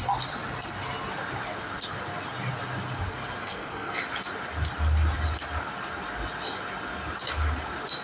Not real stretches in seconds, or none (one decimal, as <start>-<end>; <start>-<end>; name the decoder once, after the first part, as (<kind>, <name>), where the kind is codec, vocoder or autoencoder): 3.4-4.0 (codec, SNAC)